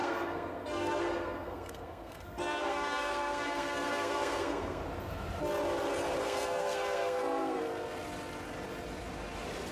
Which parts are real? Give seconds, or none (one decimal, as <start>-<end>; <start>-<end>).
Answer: 4.8-6.2; 7.7-9.7